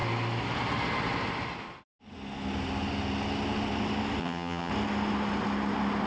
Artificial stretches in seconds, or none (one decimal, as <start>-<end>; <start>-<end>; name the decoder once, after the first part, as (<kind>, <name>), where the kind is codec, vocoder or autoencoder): 4.2-4.7 (vocoder, HiFi-GAN)